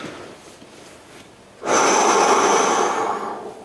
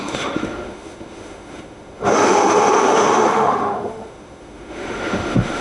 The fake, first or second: second